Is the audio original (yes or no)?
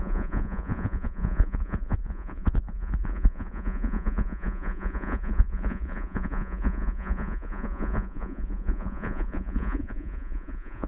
no